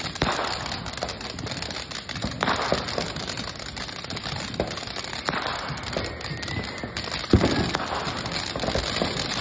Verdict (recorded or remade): recorded